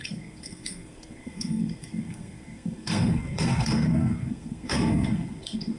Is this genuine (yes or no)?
no